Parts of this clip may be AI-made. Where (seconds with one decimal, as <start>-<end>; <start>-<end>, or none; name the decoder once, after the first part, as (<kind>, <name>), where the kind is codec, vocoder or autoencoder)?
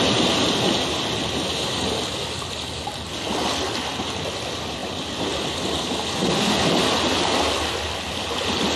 none